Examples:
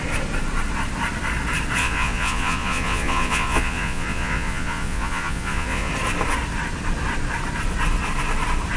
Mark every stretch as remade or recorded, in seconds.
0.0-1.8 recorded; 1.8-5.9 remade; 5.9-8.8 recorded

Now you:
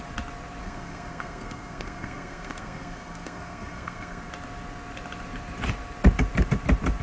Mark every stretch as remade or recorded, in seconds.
0.0-0.6 recorded; 0.6-4.3 remade; 4.3-7.0 recorded

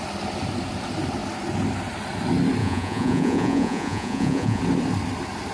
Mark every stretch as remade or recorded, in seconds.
0.0-2.6 recorded; 2.6-4.6 remade; 4.6-5.5 recorded